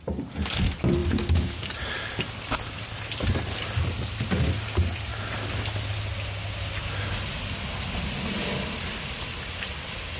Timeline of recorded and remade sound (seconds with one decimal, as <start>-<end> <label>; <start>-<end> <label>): 0.0-10.2 recorded